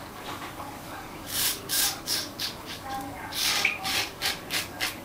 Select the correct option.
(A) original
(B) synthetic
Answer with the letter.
B